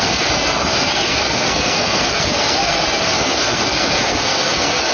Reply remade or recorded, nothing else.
remade